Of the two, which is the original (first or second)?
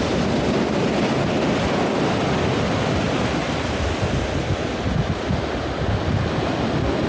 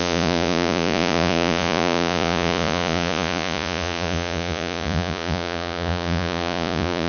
first